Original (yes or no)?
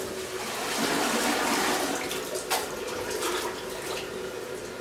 yes